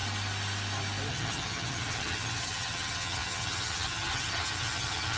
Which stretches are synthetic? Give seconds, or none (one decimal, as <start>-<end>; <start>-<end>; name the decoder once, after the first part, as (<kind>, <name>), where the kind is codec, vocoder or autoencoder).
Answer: 1.1-5.2 (vocoder, HiFi-GAN)